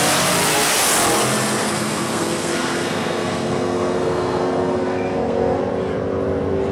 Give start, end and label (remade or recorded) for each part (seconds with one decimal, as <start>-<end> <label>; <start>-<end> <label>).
0.0-1.6 recorded; 1.6-5.6 remade; 5.6-6.7 recorded